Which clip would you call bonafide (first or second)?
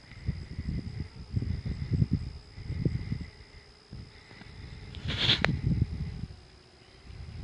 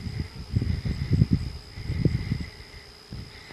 first